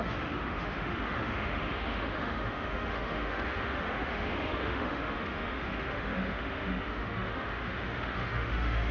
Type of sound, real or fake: fake